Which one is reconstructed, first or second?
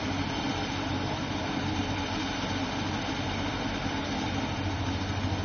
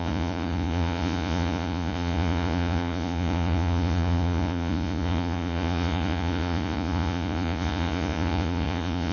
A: second